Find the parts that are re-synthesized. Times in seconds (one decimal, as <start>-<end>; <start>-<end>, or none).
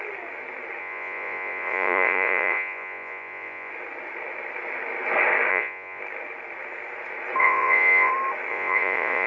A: 0.8-3.7; 5.5-6.0; 7.4-8.1; 8.5-9.3